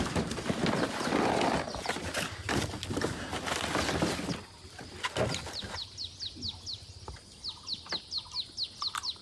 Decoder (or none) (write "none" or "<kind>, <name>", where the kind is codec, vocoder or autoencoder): none